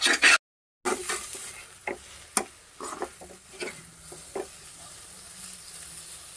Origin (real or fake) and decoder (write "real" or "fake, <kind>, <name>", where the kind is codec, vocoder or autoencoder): real